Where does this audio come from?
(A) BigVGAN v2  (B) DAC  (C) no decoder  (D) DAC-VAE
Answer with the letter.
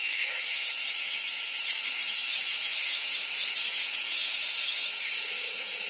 D